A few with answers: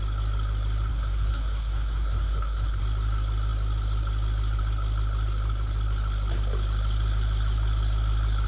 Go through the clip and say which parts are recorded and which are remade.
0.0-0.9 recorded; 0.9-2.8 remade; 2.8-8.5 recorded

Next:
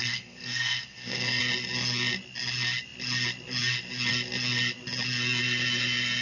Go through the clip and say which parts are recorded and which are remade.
0.0-1.4 remade; 1.4-6.2 recorded

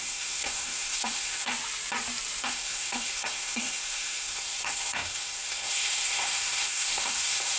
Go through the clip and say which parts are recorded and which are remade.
0.0-1.5 remade; 1.5-2.4 recorded; 2.4-7.6 remade

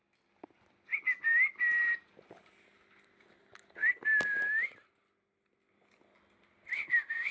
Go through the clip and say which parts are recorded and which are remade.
0.0-7.3 recorded

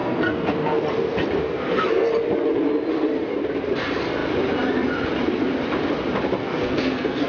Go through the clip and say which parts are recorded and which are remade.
0.0-0.8 remade; 0.8-1.4 recorded; 1.4-2.1 remade; 2.1-6.4 recorded; 6.4-7.3 remade

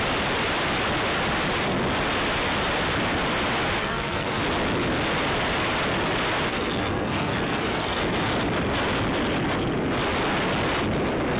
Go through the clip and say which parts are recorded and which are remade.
0.0-3.8 recorded; 3.8-4.4 remade; 4.4-6.5 recorded; 6.5-8.0 remade; 8.0-11.4 recorded

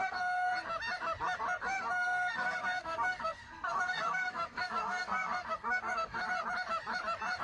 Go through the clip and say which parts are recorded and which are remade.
0.0-0.5 remade; 0.5-1.6 recorded; 1.6-6.2 remade; 6.2-7.4 recorded

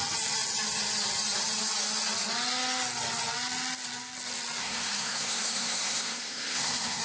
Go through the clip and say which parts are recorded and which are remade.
0.0-4.6 recorded; 4.6-7.0 remade